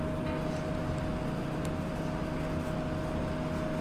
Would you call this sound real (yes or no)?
yes